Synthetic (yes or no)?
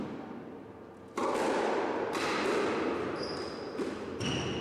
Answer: no